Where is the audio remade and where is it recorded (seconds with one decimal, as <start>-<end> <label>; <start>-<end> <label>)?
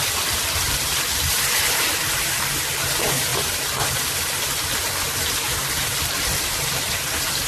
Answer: 0.0-7.5 recorded